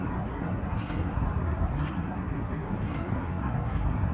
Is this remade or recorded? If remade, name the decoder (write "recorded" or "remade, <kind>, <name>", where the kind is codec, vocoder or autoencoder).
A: remade, codec, SNAC